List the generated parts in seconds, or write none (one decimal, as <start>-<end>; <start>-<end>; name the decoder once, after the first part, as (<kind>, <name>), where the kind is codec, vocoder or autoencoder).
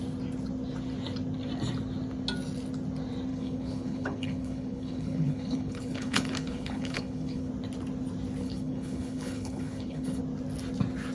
3.3-7.5 (codec, HILCodec); 8.4-10.2